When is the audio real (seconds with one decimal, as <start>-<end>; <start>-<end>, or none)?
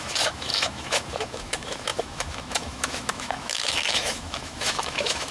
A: none